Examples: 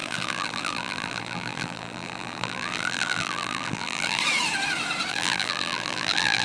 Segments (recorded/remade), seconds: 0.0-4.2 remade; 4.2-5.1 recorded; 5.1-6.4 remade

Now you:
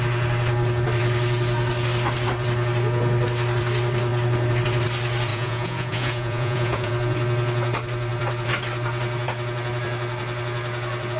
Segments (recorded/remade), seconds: 0.0-5.3 recorded; 5.3-6.9 remade; 6.9-11.2 recorded